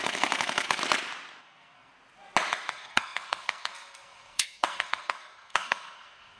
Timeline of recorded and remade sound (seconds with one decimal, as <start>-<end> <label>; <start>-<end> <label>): 0.0-0.8 remade; 0.8-1.4 recorded; 1.4-1.9 remade; 1.9-2.7 recorded; 2.7-6.4 remade